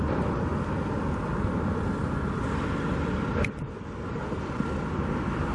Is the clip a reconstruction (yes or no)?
no